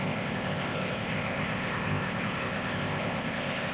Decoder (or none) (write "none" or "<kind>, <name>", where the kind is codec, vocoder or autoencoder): codec, ZipCodec